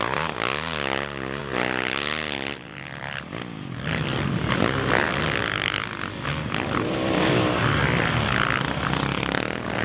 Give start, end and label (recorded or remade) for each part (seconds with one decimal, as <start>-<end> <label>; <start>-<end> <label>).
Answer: 0.0-9.8 recorded